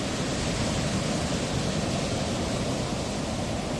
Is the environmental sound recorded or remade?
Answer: recorded